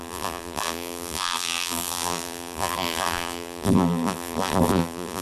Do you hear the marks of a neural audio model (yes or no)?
yes